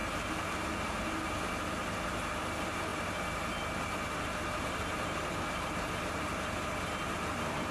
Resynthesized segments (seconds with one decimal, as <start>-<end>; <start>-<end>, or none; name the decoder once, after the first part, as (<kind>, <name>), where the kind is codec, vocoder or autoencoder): none